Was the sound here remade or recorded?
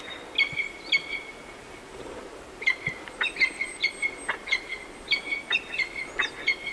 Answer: recorded